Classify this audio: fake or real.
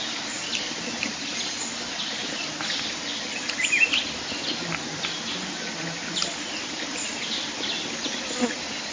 real